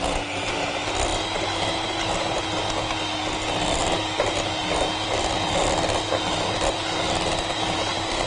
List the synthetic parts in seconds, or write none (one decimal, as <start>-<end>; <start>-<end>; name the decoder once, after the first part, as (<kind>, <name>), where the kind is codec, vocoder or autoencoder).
none